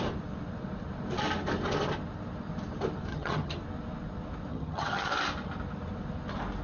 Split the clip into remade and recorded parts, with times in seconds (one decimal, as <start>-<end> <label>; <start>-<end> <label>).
0.0-3.1 recorded; 3.1-3.6 remade; 3.6-4.5 recorded; 4.5-5.1 remade; 5.1-6.6 recorded